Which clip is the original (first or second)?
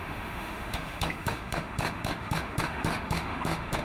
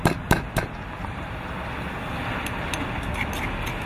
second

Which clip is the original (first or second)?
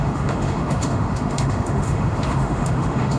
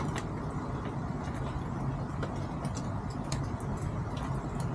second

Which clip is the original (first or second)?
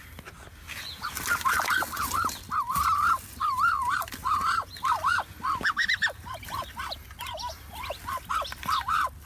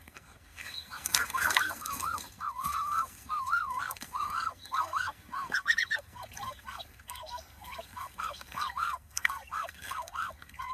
first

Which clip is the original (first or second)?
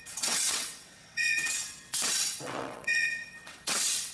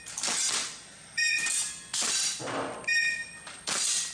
second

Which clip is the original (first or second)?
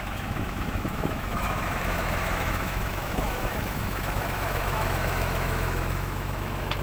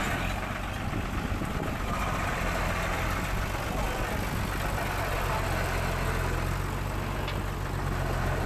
second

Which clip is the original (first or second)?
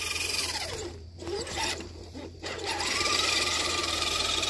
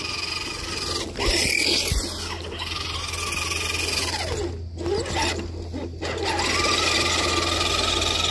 second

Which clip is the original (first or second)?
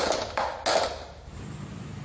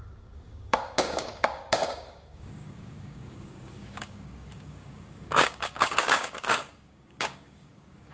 first